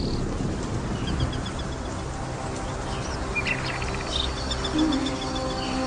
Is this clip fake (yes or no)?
no